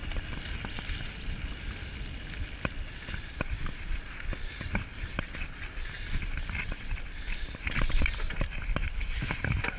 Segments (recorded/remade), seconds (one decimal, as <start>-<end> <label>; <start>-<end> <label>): 0.0-9.8 recorded